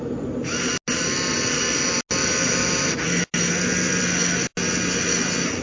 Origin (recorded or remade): recorded